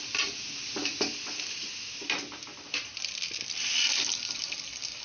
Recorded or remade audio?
recorded